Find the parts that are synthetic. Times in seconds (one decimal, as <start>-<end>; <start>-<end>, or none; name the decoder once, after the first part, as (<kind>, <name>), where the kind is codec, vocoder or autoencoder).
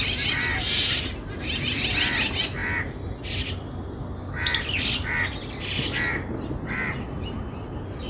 none